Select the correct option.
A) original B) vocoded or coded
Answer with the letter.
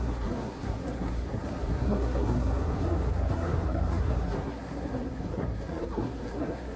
B